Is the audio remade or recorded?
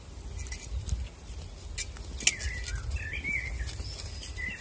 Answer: recorded